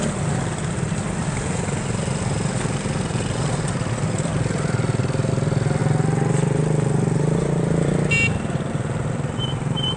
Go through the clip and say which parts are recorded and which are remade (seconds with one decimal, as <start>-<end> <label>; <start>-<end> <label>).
0.0-5.8 remade; 5.8-8.7 recorded; 8.7-10.0 remade